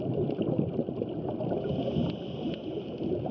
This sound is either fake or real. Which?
real